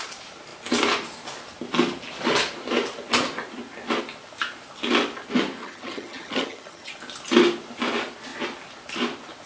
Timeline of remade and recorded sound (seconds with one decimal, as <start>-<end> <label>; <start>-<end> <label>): 0.0-5.6 recorded; 5.6-6.9 remade; 6.9-9.5 recorded